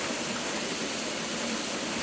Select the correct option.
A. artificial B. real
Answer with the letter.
B